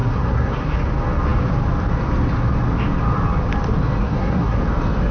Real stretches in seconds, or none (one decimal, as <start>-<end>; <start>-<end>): 0.8-4.0; 4.6-5.1